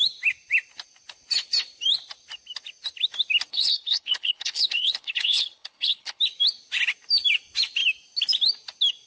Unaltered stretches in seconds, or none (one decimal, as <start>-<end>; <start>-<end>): 0.0-3.5; 6.2-9.1